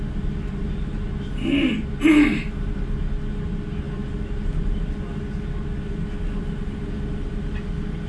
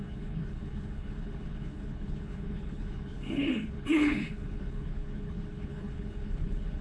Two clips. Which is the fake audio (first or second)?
second